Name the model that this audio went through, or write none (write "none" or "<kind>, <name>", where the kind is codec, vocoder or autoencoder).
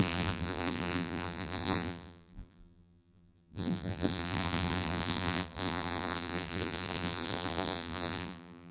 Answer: vocoder, BigVGAN v2